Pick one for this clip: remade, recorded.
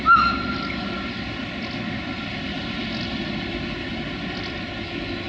recorded